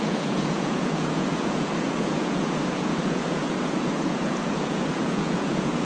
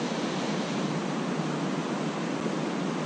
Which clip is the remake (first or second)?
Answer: first